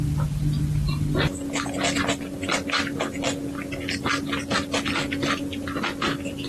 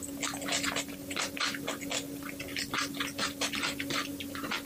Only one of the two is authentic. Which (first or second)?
first